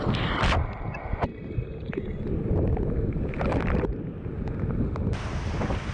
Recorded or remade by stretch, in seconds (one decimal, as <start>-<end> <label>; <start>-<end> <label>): 0.0-1.3 recorded; 1.3-4.5 remade; 4.5-5.9 recorded